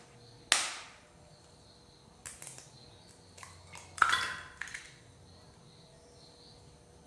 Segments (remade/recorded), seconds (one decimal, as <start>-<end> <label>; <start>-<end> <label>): 0.0-7.1 recorded